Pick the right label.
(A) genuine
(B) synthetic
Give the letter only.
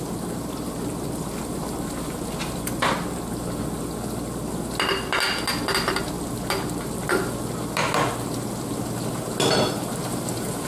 A